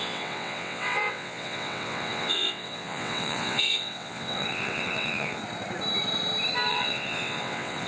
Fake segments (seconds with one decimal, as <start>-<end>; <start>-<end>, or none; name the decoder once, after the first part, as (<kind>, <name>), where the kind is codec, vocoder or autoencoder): 0.0-5.4 (vocoder, WaveNeXt); 6.7-7.9